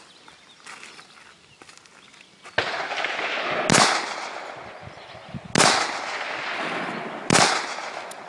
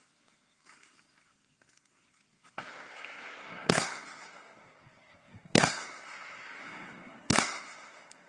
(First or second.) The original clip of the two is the first